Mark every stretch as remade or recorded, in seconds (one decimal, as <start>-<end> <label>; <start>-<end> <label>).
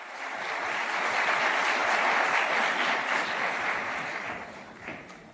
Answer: 0.0-5.3 recorded